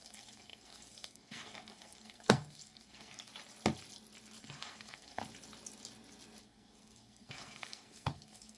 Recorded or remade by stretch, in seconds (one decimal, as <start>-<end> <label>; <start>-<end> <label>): 0.0-3.3 remade; 3.3-4.4 recorded; 4.4-5.2 remade; 5.2-6.4 recorded; 6.4-8.6 remade